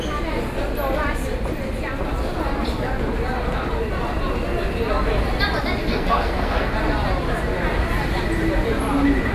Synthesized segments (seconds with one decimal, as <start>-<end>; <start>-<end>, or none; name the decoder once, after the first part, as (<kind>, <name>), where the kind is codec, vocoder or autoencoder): 5.8-6.7 (codec, SNAC)